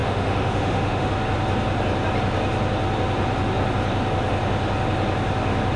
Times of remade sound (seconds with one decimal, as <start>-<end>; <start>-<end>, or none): 0.0-1.1